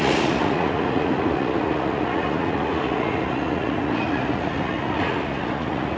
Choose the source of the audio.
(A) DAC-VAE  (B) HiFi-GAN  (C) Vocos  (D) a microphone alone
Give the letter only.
C